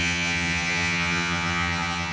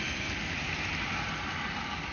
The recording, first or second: second